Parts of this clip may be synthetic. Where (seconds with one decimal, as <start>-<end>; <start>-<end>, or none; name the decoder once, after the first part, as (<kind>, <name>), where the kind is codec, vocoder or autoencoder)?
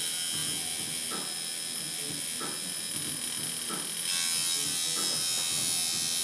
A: none